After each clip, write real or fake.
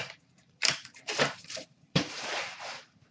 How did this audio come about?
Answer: fake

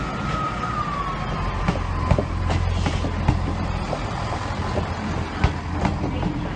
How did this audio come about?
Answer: real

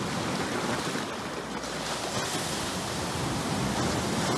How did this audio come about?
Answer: real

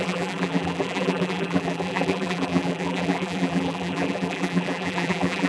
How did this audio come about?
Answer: fake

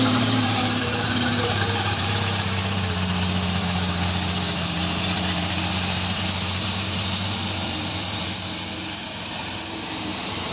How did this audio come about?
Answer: fake